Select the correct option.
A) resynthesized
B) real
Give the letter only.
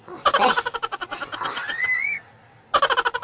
B